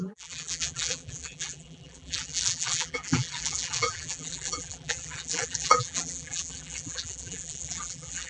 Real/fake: fake